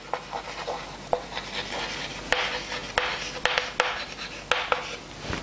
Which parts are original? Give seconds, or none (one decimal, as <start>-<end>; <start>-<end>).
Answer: 0.0-5.4